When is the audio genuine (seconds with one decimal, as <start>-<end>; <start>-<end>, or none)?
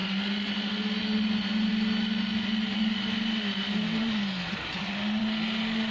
0.0-5.9